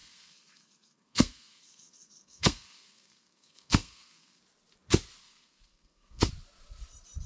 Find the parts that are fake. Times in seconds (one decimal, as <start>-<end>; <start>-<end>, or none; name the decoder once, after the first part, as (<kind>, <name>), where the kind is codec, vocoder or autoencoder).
0.0-4.4 (codec, SNAC); 5.2-6.3